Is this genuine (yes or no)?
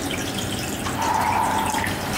no